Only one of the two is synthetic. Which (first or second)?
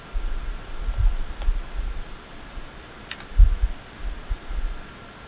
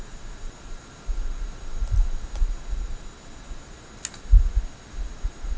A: first